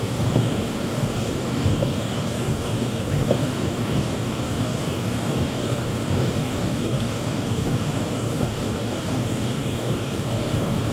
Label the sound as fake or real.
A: fake